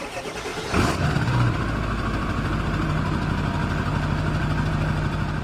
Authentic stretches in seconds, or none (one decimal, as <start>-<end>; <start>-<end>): none